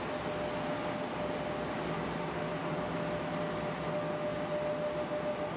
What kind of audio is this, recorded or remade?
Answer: recorded